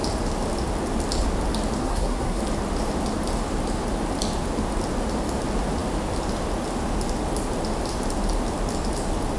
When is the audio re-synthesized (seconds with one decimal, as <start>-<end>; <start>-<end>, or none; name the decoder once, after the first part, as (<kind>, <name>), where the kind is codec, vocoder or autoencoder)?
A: 1.8-2.4 (codec, SNAC)